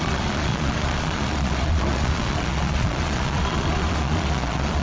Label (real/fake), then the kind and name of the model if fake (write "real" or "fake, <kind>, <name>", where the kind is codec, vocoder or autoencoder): fake, vocoder, Vocos